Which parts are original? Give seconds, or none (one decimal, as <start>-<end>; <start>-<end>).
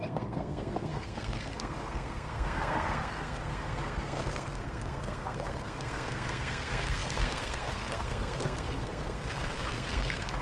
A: none